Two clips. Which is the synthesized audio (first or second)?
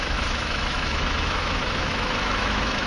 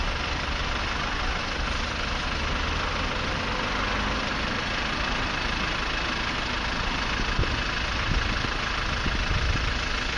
first